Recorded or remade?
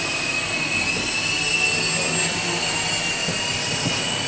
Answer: recorded